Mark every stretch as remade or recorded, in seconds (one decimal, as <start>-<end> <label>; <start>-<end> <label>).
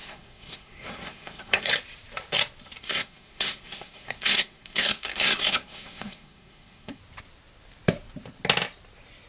0.0-1.7 remade; 1.7-2.8 recorded; 2.8-7.0 remade; 7.0-9.3 recorded